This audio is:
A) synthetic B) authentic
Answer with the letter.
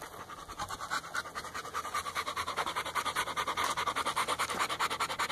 B